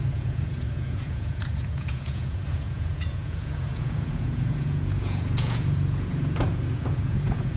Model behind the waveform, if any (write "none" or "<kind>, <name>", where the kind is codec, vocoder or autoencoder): vocoder, Vocos